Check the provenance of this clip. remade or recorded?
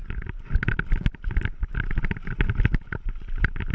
recorded